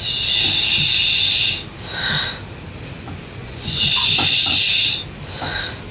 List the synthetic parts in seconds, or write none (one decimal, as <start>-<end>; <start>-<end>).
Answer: 3.4-4.3